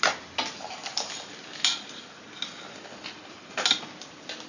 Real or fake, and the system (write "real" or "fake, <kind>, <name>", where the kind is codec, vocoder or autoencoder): real